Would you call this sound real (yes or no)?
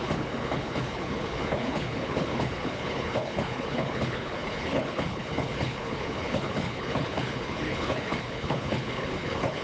no